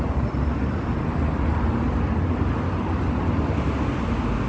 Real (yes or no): yes